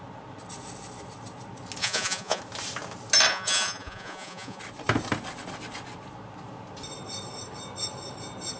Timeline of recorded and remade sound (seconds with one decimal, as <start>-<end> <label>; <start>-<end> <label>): 0.0-1.8 recorded; 1.8-2.4 remade; 2.4-3.3 recorded; 3.3-4.6 remade; 4.6-8.6 recorded

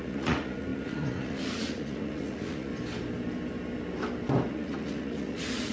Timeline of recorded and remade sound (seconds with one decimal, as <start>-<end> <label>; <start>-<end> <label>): 0.0-2.7 remade; 2.7-4.5 recorded; 4.5-5.7 remade